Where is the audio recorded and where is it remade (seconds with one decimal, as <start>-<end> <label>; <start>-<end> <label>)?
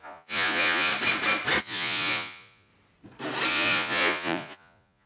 0.0-0.9 remade; 0.9-1.6 recorded; 1.6-2.7 remade; 2.7-3.5 recorded; 3.5-5.1 remade